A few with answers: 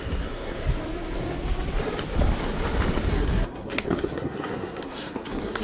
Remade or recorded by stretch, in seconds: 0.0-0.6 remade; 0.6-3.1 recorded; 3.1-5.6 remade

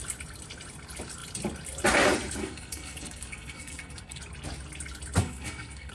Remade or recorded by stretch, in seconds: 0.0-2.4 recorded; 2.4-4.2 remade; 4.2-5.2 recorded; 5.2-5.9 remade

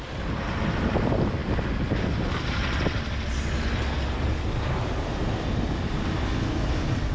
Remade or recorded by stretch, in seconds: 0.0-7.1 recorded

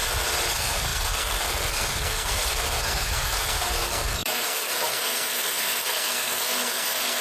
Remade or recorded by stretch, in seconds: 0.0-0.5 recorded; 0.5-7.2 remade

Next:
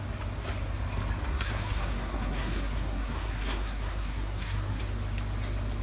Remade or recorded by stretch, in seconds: 0.0-1.3 recorded; 1.3-4.8 remade; 4.8-5.8 recorded

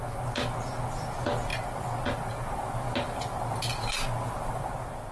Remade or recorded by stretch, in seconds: 0.0-5.1 recorded

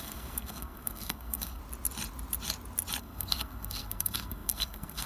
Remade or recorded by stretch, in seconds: 0.0-1.6 remade; 1.6-3.0 recorded; 3.0-5.1 remade

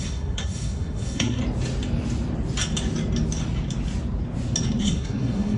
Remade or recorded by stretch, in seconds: 0.0-1.4 remade; 1.4-4.8 recorded; 4.8-5.6 remade